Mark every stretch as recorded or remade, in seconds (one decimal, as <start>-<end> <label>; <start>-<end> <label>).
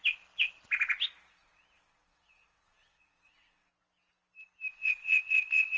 0.0-1.3 recorded; 1.3-3.7 remade; 3.7-4.7 recorded; 4.7-5.8 remade